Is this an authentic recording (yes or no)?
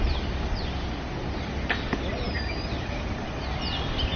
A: yes